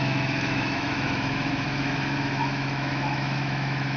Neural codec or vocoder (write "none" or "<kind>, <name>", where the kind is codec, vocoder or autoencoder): autoencoder, DAC-VAE